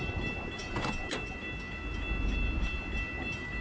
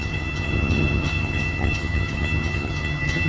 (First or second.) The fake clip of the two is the second